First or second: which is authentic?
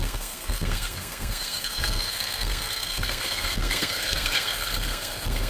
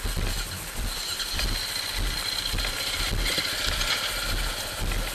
second